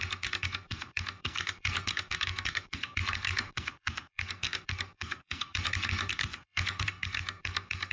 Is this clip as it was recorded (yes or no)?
no